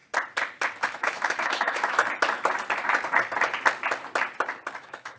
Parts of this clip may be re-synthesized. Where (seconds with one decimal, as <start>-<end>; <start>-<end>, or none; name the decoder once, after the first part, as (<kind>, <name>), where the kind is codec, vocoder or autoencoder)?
0.8-2.0 (autoencoder, DAC-VAE); 4.8-5.2